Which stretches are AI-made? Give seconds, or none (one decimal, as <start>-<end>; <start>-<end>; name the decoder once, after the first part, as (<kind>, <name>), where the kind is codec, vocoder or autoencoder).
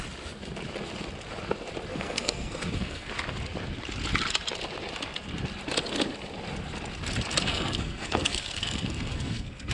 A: 1.9-3.1 (codec, SNAC); 7.5-9.7